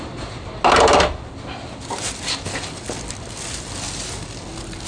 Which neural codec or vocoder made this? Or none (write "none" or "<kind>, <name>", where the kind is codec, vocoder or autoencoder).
none